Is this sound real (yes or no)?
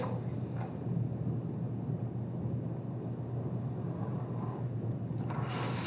yes